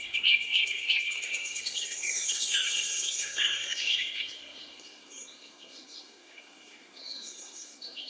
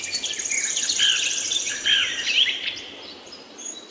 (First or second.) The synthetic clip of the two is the first